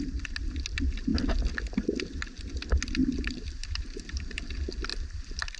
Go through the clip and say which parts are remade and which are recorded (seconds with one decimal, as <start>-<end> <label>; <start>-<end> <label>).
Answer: 0.0-3.0 recorded; 3.0-4.5 remade; 4.5-4.9 recorded; 4.9-5.6 remade